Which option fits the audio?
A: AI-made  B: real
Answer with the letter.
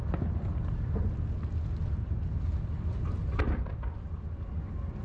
B